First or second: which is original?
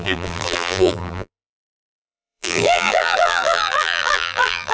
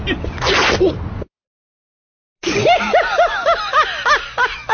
second